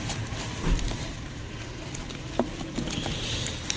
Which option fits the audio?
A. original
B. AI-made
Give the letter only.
A